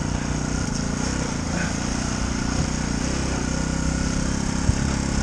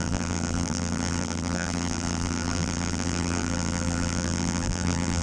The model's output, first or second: second